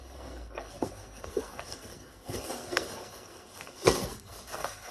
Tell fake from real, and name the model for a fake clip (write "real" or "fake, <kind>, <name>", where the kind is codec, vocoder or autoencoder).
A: fake, codec, SNAC